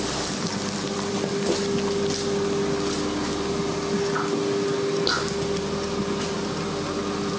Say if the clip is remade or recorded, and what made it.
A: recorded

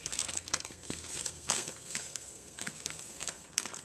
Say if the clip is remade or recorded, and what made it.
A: remade, codec, SNAC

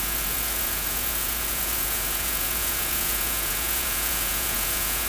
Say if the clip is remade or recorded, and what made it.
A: remade, vocoder, Vocos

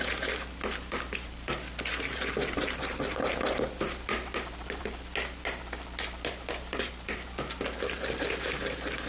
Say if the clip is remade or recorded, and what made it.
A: recorded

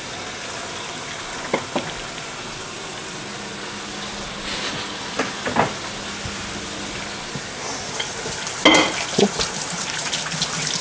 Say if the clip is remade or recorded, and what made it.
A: recorded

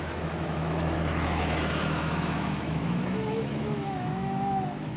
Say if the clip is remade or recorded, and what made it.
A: remade, autoencoder, DAC-VAE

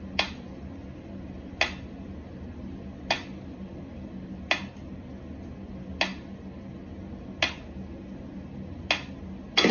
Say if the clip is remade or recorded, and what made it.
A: recorded